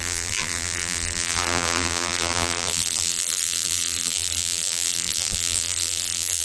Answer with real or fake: fake